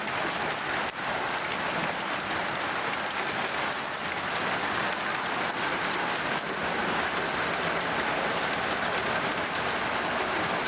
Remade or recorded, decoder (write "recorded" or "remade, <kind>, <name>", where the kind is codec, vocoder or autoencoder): recorded